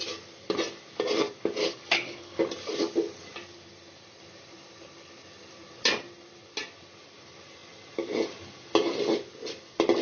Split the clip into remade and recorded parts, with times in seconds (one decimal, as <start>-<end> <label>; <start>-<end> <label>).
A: 0.0-1.6 recorded; 1.6-2.4 remade; 2.4-10.0 recorded